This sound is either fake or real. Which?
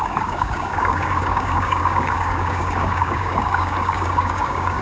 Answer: fake